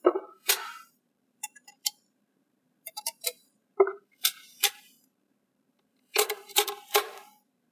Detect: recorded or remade remade